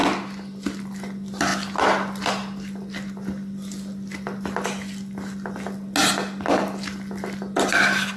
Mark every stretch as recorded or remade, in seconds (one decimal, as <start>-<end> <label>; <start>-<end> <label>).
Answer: 0.0-8.2 recorded